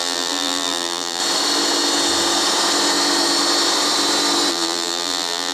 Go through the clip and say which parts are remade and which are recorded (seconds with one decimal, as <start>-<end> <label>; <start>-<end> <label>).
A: 0.0-1.2 remade; 1.2-4.5 recorded; 4.5-5.5 remade